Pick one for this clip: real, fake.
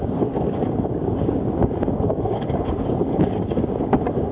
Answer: fake